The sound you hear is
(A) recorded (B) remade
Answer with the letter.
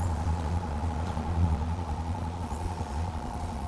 B